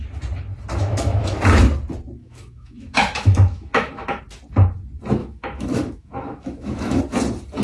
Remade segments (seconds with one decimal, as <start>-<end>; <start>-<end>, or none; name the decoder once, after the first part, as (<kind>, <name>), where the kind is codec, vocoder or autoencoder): 0.8-1.4 (autoencoder, DAC-VAE); 2.2-4.2; 5.2-7.0